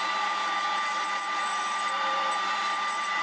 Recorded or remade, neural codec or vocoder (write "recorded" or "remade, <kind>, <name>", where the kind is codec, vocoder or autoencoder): remade, vocoder, BigVGAN v2